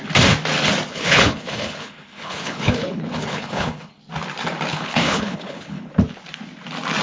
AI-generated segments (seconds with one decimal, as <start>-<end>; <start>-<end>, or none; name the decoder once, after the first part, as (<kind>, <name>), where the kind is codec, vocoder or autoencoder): 0.9-4.0 (codec, HILCodec); 4.7-5.9